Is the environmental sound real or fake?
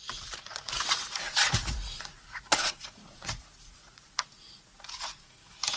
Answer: fake